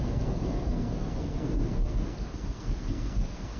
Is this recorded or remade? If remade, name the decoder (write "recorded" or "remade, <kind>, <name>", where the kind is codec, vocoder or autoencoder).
remade, codec, SNAC